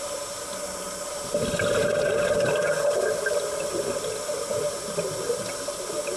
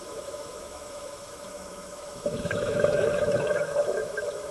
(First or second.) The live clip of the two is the first